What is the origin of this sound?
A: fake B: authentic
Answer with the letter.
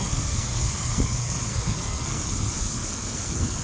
A